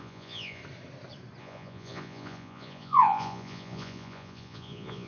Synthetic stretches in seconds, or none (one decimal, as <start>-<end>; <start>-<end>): 0.0-0.6; 1.4-5.1